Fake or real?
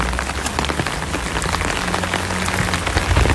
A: real